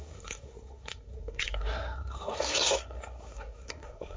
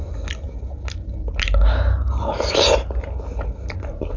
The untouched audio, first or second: second